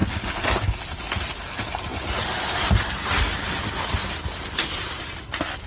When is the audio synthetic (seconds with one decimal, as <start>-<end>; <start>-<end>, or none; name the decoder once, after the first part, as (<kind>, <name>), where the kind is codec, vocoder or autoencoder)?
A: 1.9-3.6 (vocoder, BigVGAN v2); 4.0-5.2